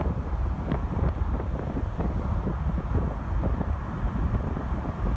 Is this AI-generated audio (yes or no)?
no